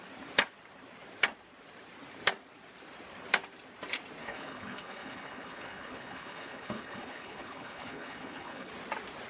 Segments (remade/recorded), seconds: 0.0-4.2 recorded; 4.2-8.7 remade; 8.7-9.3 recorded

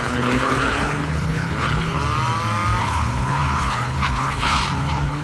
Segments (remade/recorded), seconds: 0.0-2.0 remade; 2.0-2.8 recorded; 2.8-5.2 remade

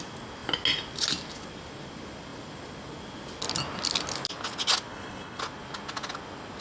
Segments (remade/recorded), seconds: 0.0-4.9 recorded; 4.9-5.4 remade; 5.4-6.6 recorded

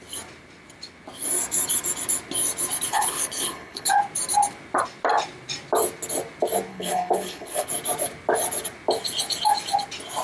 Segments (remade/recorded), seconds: 0.0-2.9 recorded; 2.9-3.9 remade; 3.9-6.7 recorded; 6.7-7.7 remade; 7.7-10.2 recorded

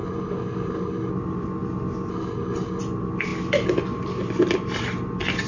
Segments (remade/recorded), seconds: 0.0-1.1 remade; 1.1-2.1 recorded; 2.1-2.8 remade; 2.8-5.5 recorded

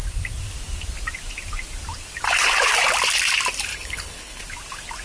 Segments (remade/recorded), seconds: 0.0-3.7 recorded; 3.7-4.4 remade; 4.4-5.0 recorded